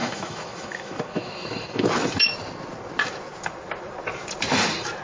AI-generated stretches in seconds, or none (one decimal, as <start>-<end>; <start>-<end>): 0.0-1.9